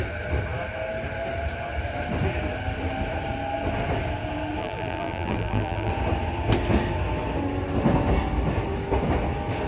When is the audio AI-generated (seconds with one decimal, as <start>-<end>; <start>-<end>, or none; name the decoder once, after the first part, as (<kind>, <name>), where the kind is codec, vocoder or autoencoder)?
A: 4.6-5.9 (vocoder, BigVGAN v2)